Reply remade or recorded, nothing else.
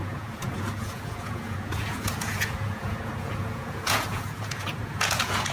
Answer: remade